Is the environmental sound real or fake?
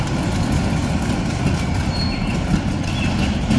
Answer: real